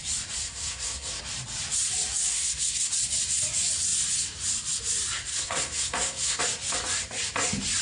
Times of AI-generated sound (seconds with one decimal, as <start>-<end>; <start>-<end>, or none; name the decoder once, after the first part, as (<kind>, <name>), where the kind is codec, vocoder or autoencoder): 0.4-1.2 (codec, SNAC); 2.3-2.9; 5.3-6.4